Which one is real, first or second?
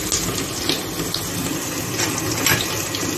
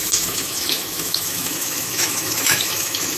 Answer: first